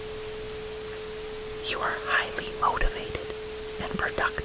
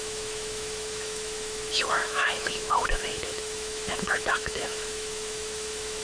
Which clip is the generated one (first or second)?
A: second